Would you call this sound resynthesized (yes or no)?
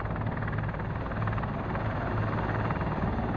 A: no